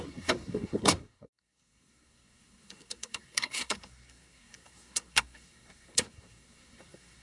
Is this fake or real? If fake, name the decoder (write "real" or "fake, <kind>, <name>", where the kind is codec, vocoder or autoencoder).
fake, codec, SNAC